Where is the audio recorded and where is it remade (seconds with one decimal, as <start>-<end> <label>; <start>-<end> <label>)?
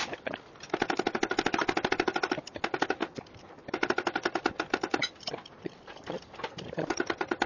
0.0-7.5 recorded